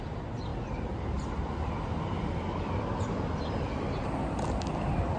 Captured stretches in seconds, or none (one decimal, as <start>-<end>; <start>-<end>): 0.0-5.2